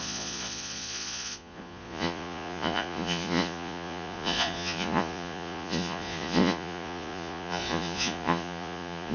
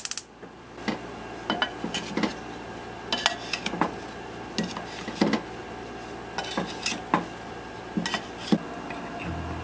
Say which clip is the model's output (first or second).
first